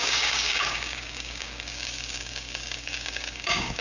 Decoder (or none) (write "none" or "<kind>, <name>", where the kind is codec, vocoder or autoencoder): codec, DAC